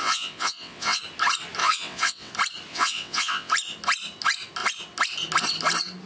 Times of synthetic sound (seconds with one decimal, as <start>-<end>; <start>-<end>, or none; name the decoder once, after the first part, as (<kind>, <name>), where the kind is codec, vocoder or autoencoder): 0.0-1.0 (vocoder, WaveNeXt); 1.6-2.3; 2.7-3.5